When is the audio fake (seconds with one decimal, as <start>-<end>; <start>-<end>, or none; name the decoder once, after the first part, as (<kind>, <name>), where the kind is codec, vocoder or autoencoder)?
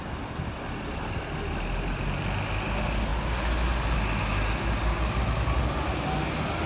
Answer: none